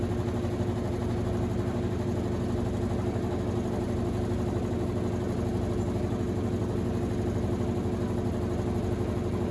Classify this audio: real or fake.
real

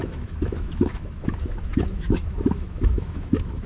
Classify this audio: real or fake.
fake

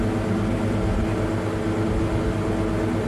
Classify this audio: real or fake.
real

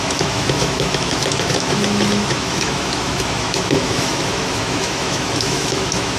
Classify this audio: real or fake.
fake